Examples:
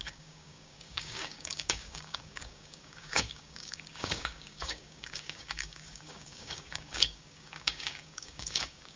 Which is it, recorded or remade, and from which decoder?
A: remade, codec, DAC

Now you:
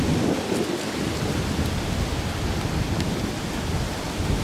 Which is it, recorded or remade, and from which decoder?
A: recorded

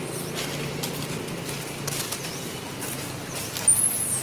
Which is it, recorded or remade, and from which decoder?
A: recorded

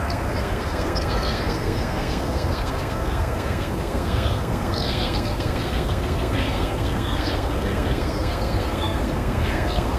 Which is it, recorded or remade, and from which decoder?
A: remade, codec, SNAC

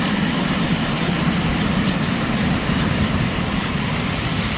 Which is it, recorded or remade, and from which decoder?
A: remade, vocoder, BigVGAN v2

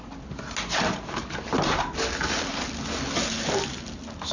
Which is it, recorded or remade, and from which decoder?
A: recorded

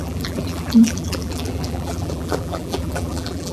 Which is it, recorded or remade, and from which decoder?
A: remade, vocoder, BigVGAN v2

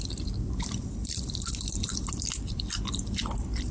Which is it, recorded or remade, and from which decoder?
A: remade, vocoder, BigVGAN v2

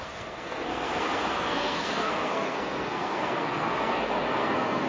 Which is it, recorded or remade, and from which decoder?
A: remade, codec, SNAC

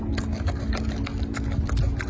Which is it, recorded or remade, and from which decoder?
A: recorded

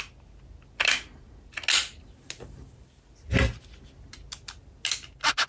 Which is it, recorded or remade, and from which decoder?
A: recorded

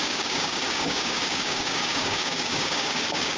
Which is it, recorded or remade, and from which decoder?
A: remade, codec, DAC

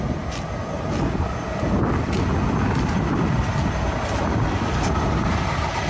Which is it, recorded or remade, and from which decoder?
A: recorded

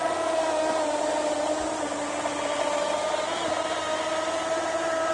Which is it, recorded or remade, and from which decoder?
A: recorded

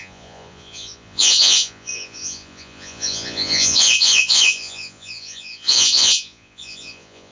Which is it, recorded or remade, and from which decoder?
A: remade, vocoder, Vocos